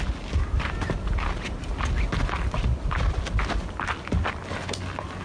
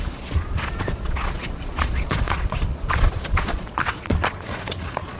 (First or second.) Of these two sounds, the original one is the first